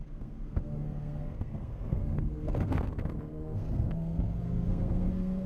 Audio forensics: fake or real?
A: fake